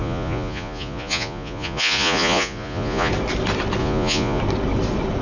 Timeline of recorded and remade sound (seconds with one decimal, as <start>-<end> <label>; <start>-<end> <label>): 0.0-3.1 remade; 3.1-3.8 recorded; 3.8-4.4 remade; 4.4-5.2 recorded